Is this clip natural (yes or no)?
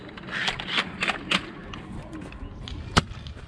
yes